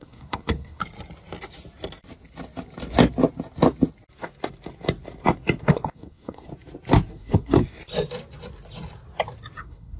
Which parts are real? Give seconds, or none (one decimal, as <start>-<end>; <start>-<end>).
0.8-5.6; 6.5-7.1; 7.8-9.6